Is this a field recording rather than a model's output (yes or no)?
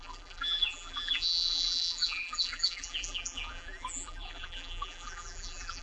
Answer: no